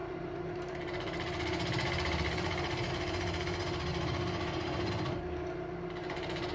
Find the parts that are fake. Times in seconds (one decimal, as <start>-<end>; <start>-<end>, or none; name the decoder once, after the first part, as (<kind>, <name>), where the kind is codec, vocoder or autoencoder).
0.0-2.9 (vocoder, BigVGAN v2); 3.9-4.9; 6.0-6.5